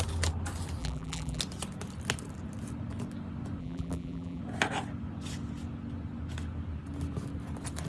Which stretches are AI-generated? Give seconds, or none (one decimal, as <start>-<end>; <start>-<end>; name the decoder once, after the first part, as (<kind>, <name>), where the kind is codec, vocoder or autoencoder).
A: 0.8-1.4 (vocoder, BigVGAN v2); 3.6-4.4